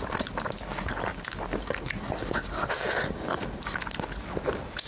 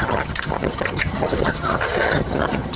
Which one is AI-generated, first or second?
second